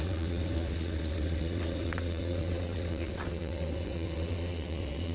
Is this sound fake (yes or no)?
yes